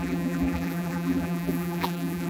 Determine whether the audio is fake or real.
fake